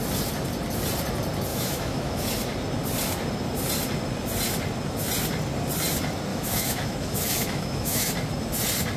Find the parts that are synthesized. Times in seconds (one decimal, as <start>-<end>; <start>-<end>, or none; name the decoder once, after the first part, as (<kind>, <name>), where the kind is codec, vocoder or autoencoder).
1.5-2.2 (autoencoder, DAC-VAE); 6.3-8.1